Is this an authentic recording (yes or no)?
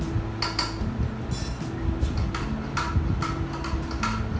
yes